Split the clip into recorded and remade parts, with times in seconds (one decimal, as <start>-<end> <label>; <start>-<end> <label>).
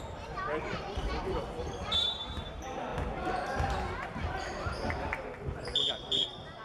0.0-2.9 remade; 2.9-5.6 recorded; 5.6-6.6 remade